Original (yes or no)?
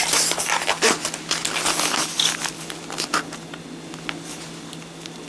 yes